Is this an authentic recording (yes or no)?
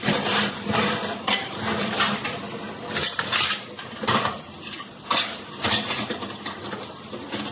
yes